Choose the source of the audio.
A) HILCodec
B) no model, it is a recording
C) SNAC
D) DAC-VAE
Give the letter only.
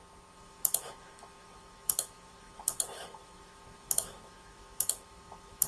D